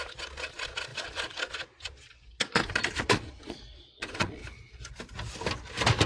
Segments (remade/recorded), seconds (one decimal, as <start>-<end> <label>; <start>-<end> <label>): 0.0-4.4 remade; 4.4-6.1 recorded